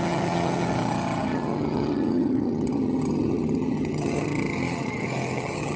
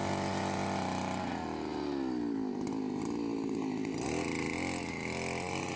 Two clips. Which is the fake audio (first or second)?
first